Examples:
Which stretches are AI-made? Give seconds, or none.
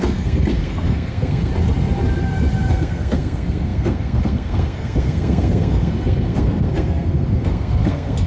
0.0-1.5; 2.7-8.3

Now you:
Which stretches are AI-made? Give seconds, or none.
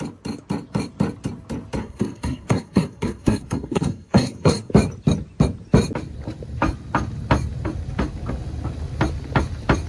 1.8-4.7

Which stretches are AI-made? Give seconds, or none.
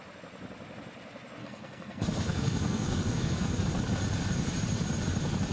1.4-3.6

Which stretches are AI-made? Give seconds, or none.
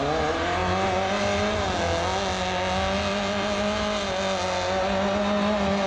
none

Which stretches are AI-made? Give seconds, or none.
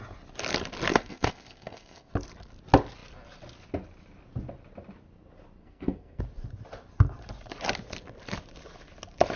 0.9-2.1; 5.6-6.2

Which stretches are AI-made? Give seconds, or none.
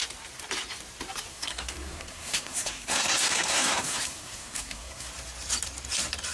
1.3-5.1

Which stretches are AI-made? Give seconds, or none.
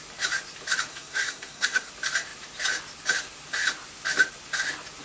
0.9-1.9